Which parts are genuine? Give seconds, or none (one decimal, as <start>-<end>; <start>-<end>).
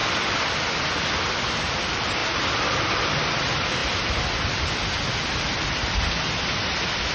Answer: 0.0-7.1